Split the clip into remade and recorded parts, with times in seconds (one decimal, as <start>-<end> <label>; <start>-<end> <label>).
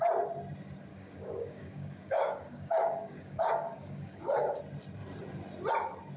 0.0-0.9 recorded; 0.9-4.6 remade; 4.6-6.2 recorded